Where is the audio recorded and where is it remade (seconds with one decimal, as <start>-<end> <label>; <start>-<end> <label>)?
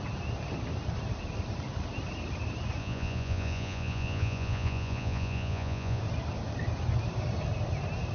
0.0-2.8 recorded; 2.8-6.0 remade; 6.0-8.1 recorded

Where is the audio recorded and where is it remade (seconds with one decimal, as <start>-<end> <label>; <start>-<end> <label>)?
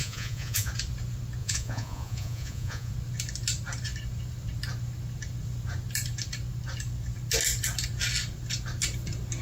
0.0-0.7 remade; 0.7-1.4 recorded; 1.4-2.9 remade; 2.9-9.4 recorded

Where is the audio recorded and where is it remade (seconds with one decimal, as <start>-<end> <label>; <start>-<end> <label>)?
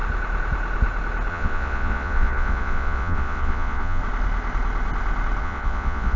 0.0-1.3 recorded; 1.3-4.0 remade; 4.0-5.4 recorded; 5.4-6.2 remade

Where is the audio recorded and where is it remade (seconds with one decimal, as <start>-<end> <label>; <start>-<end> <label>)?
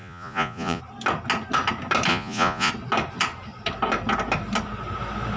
0.0-0.8 remade; 0.8-2.1 recorded; 2.1-2.7 remade; 2.7-5.4 recorded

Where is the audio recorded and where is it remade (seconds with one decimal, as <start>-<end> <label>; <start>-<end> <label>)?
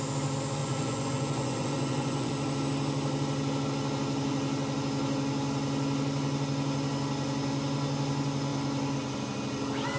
0.0-0.6 recorded; 0.6-2.3 remade; 2.3-10.0 recorded